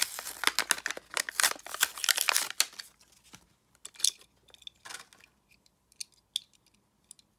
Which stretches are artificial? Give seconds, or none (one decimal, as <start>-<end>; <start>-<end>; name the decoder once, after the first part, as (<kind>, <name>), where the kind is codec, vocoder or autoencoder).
none